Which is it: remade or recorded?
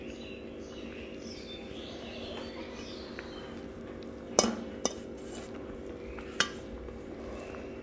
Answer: recorded